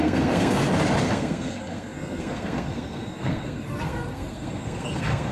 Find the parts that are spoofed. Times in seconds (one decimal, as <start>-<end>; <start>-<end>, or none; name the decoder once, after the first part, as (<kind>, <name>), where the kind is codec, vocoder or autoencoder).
0.0-0.6 (codec, SNAC); 1.1-5.3